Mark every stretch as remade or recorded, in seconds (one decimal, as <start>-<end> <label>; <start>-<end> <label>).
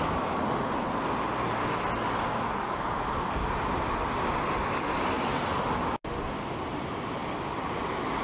0.0-8.2 recorded